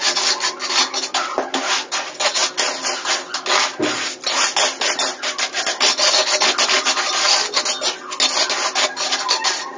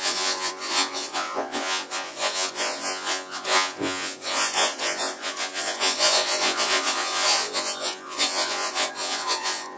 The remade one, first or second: second